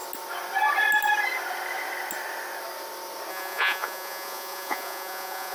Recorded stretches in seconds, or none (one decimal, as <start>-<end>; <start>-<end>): 0.0-3.3